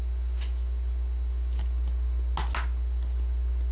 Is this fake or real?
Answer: real